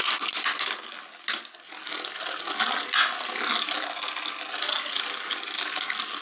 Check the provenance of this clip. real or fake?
real